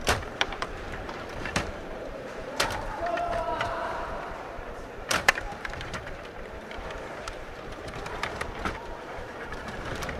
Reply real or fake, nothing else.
fake